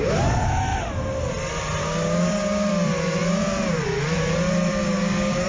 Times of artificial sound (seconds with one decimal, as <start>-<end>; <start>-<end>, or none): 1.8-2.7; 4.8-5.5